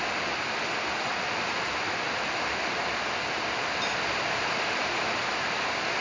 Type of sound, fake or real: real